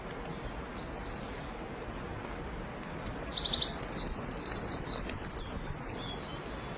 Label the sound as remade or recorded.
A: recorded